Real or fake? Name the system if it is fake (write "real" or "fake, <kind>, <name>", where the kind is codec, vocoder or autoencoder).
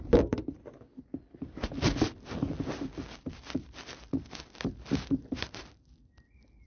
real